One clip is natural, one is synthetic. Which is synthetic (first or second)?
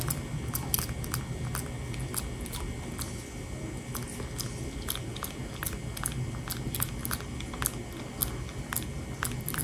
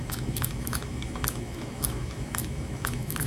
second